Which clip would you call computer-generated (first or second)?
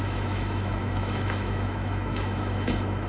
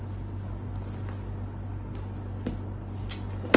first